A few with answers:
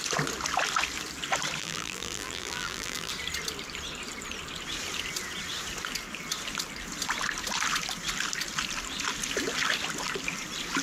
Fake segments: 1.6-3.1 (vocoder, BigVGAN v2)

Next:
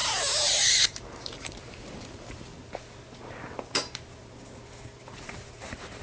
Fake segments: 0.5-2.5 (vocoder, BigVGAN v2); 3.6-4.2; 5.0-6.0

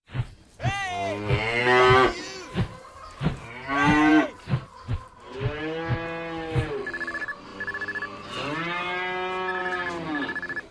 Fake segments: none

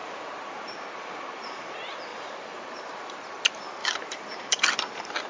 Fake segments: 0.0-1.7 (vocoder, BigVGAN v2); 2.1-3.2; 3.8-4.6

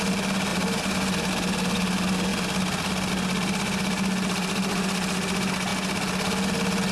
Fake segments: none